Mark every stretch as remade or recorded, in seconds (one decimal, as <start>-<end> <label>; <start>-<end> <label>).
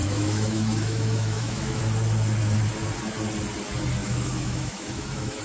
0.0-1.8 remade; 1.8-4.0 recorded; 4.0-5.4 remade